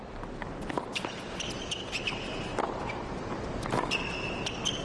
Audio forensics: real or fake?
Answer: real